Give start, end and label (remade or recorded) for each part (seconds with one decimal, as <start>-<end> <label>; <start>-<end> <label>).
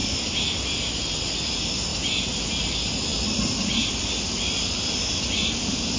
0.0-6.0 recorded